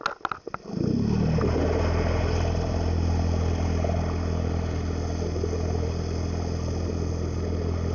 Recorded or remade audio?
recorded